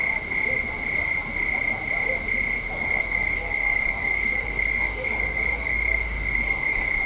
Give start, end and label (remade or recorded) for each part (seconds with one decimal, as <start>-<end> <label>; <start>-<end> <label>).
0.0-2.7 recorded; 2.7-7.1 remade